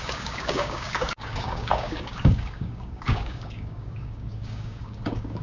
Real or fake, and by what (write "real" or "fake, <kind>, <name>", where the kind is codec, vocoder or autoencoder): fake, codec, DAC